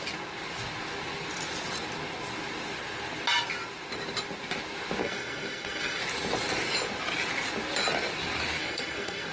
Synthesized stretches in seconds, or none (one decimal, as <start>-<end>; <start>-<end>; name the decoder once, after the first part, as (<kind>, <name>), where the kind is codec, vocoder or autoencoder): 5.0-6.0 (codec, SNAC); 8.6-9.3